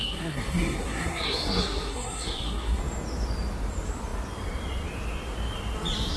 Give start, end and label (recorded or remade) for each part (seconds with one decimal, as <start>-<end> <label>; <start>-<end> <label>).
0.0-2.8 remade; 2.8-6.2 recorded